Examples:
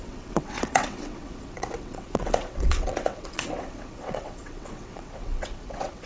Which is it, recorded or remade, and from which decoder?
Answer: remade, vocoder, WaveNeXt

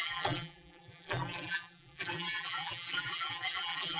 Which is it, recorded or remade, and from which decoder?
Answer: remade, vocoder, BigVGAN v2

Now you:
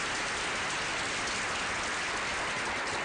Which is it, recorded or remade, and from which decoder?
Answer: recorded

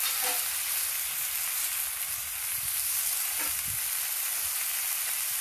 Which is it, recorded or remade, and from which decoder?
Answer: recorded